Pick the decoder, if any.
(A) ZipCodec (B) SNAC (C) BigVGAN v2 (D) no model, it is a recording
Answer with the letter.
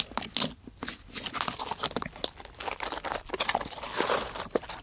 D